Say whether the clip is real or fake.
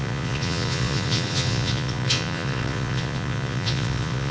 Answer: fake